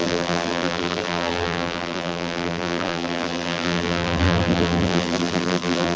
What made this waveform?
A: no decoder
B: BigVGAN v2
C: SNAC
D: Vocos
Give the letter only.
B